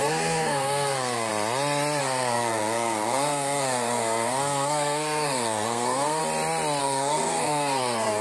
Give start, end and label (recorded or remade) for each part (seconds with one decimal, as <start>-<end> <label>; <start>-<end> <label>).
0.0-1.3 remade; 1.3-2.0 recorded; 2.0-6.2 remade; 6.2-6.8 recorded; 6.8-8.2 remade